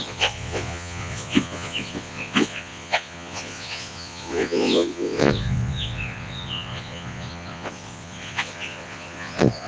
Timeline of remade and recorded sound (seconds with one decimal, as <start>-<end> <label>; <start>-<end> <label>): 0.0-9.7 remade